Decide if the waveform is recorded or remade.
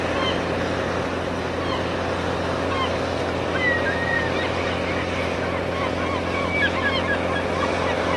recorded